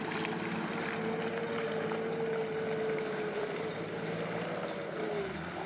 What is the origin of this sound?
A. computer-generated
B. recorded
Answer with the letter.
B